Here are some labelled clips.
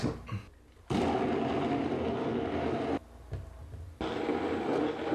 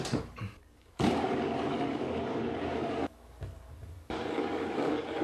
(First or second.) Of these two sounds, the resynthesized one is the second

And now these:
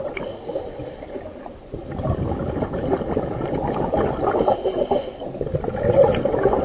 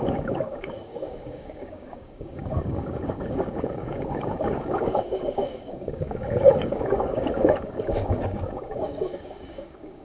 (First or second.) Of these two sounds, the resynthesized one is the second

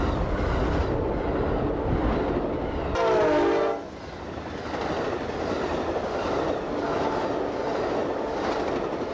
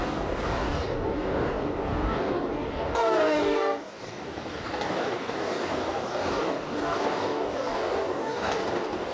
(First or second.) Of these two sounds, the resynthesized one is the second